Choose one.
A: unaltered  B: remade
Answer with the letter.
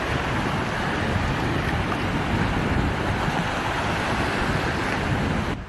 A